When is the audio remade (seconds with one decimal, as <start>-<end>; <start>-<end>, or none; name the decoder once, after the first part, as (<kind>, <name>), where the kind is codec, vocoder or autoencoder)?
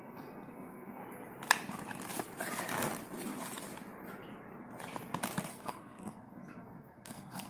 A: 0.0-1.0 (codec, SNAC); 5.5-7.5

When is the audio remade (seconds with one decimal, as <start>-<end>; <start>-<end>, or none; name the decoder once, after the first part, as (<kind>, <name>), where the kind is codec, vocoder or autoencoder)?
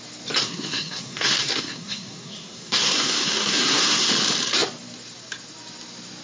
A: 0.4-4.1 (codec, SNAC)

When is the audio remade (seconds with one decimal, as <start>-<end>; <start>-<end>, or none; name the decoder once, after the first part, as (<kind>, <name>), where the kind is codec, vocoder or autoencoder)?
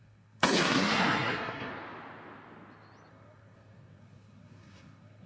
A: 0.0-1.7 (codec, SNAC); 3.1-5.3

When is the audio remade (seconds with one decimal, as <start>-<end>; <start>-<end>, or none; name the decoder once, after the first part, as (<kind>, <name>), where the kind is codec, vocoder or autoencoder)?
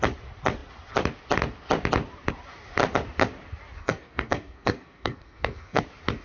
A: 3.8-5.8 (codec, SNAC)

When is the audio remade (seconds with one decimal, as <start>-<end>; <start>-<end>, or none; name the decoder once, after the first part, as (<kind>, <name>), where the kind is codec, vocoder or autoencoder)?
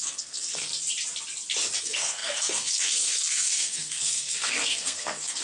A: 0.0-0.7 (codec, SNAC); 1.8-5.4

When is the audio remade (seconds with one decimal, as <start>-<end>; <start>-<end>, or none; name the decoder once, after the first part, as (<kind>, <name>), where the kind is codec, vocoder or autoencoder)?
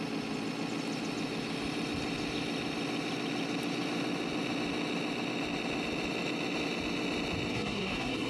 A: 7.5-8.3 (codec, SNAC)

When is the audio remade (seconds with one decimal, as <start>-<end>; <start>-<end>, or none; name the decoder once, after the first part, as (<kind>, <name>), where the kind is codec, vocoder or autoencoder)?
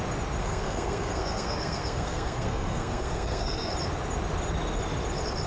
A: 0.4-3.7 (codec, SNAC)